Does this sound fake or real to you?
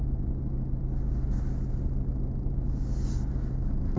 real